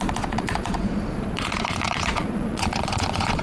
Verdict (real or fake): fake